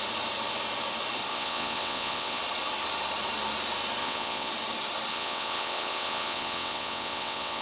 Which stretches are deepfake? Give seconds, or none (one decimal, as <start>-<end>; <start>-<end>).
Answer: 1.3-2.4; 4.0-4.5; 5.1-7.6